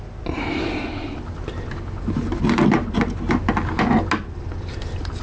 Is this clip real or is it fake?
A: real